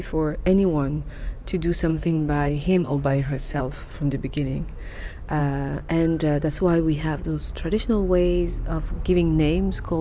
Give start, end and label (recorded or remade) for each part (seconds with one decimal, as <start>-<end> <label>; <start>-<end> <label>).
0.0-1.9 recorded; 1.9-3.6 remade; 3.6-10.0 recorded